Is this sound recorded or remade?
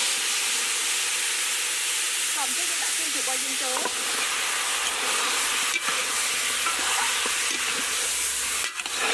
recorded